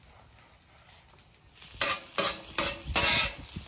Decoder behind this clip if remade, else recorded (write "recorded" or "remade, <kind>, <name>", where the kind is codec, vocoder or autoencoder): recorded